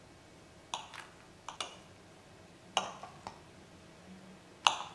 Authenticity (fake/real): real